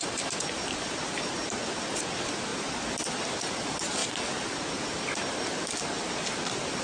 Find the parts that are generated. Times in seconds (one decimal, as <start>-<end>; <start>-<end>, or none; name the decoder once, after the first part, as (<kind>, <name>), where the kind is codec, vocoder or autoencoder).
none